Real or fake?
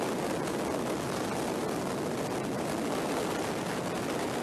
real